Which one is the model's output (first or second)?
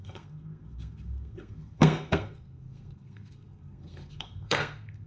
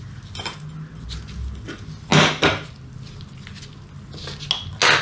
first